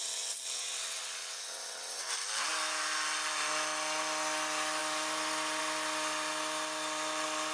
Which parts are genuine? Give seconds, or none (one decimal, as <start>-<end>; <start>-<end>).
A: 2.1-7.5